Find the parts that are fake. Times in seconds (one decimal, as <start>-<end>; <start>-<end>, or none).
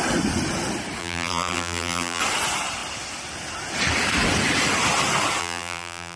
1.0-2.2; 5.4-6.2